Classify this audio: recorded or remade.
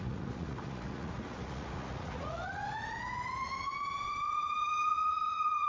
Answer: remade